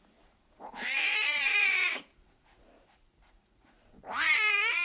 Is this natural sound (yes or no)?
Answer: no